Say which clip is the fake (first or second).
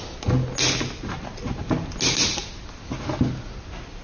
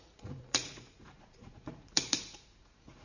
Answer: second